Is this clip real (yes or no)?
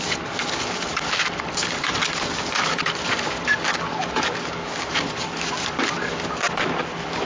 no